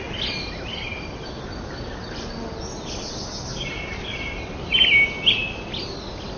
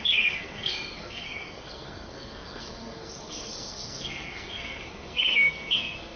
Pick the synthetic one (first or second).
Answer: second